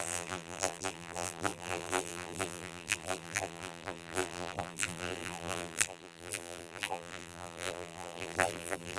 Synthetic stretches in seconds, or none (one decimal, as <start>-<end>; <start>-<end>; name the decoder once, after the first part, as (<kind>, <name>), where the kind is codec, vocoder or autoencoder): 0.0-9.0 (vocoder, BigVGAN v2)